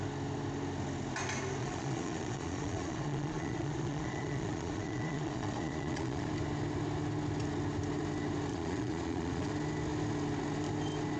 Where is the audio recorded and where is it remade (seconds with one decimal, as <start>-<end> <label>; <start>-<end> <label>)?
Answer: 0.0-1.6 recorded; 1.6-6.3 remade; 6.3-8.5 recorded; 8.5-9.5 remade; 9.5-11.2 recorded